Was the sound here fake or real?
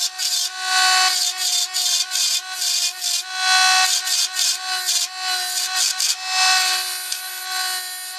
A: real